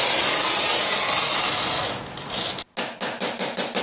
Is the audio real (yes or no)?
yes